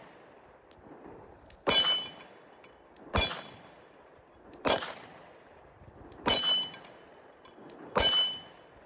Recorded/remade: recorded